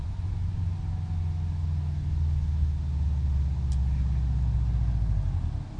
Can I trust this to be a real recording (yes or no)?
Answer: yes